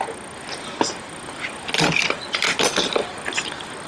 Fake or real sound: real